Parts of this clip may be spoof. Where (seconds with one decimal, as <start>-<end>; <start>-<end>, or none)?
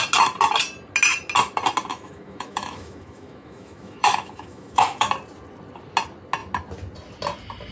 1.9-5.1